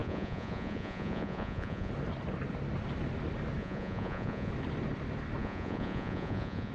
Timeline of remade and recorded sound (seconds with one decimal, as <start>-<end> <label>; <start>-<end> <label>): 0.0-1.9 remade; 1.9-3.6 recorded; 3.6-4.5 remade; 4.5-5.4 recorded; 5.4-6.7 remade